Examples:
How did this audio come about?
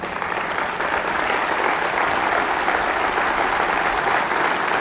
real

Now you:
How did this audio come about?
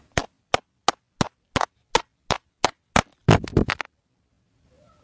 real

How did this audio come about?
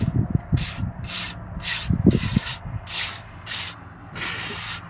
real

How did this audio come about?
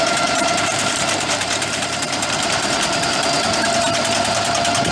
fake